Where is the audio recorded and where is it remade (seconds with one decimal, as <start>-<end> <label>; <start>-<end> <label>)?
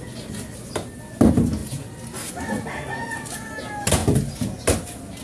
0.0-5.2 recorded